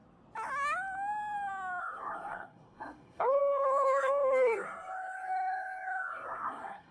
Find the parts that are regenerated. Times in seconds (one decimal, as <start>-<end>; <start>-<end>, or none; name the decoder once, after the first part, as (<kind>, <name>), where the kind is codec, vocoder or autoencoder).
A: 1.8-6.9 (codec, SNAC)